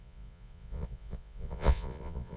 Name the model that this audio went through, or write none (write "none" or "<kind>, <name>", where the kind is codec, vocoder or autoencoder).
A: vocoder, Vocos